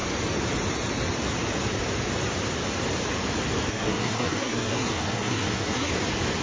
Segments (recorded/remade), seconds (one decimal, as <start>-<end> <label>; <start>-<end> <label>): 0.0-3.7 recorded; 3.7-5.9 remade; 5.9-6.4 recorded

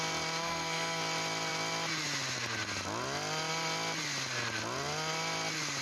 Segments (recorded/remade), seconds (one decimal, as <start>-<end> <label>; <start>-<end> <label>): 0.0-0.4 recorded; 0.4-1.0 remade; 1.0-5.8 recorded

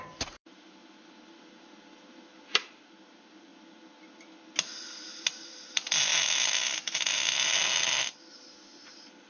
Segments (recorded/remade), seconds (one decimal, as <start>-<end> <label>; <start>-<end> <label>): 0.0-3.5 remade; 3.5-5.3 recorded; 5.3-6.1 remade; 6.1-8.3 recorded; 8.3-9.3 remade